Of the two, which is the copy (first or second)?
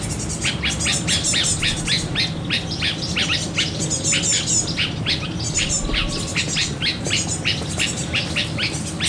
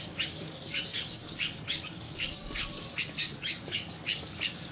second